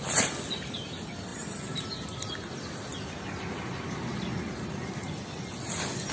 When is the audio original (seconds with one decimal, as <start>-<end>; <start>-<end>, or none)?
0.0-6.1